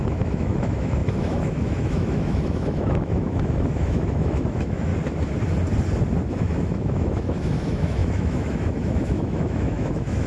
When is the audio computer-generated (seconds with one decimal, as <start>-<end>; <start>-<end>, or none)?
0.0-4.9; 6.3-10.3